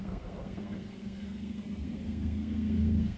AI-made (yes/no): yes